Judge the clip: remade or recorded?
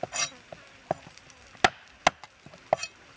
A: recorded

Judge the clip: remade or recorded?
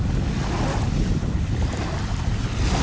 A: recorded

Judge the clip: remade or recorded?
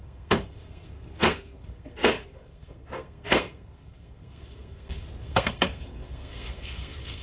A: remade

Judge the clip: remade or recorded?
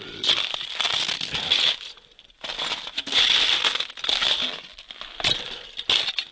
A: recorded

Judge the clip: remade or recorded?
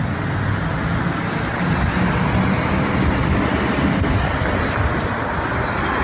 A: recorded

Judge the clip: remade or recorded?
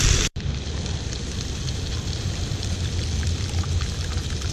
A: remade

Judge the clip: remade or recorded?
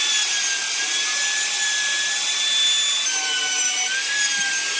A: recorded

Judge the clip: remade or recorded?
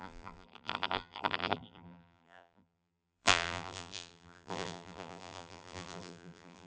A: remade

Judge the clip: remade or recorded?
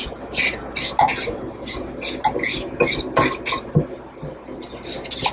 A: recorded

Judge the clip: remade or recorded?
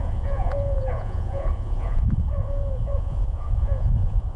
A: remade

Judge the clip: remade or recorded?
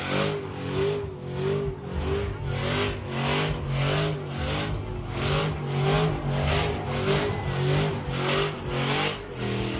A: recorded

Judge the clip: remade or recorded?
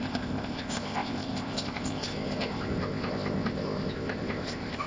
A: remade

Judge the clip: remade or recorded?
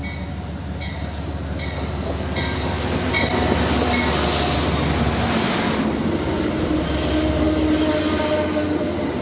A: recorded